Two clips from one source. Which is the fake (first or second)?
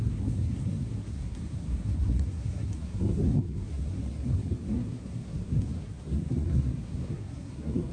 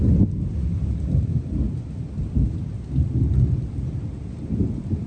first